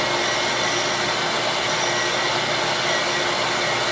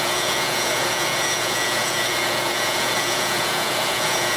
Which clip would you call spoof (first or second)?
second